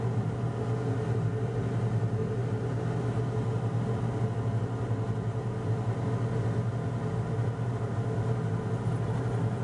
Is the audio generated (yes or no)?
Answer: no